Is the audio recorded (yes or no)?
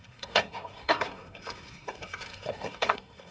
no